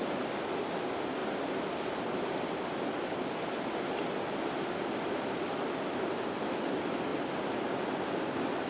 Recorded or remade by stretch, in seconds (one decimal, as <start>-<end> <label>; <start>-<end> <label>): 0.0-8.7 recorded